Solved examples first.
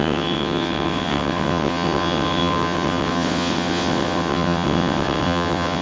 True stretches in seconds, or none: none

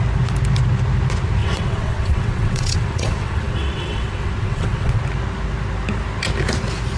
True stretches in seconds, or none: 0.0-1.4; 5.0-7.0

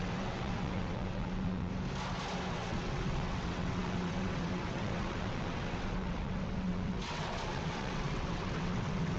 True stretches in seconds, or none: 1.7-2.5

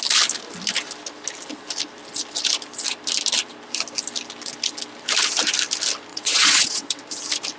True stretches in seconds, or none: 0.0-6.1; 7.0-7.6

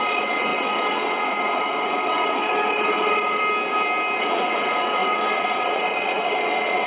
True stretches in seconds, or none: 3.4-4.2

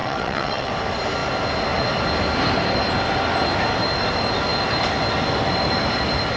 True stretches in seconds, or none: 0.7-6.4

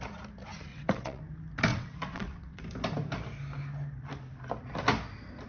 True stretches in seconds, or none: 0.0-0.7; 1.2-1.7; 2.6-5.5